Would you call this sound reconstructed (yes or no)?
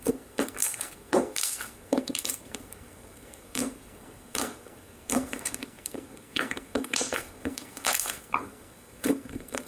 yes